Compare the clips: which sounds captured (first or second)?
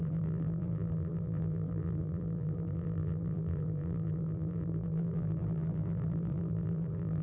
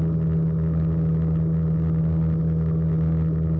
second